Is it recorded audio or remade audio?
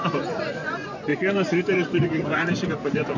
remade